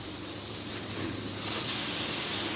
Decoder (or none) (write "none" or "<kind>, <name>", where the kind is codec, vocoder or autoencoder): none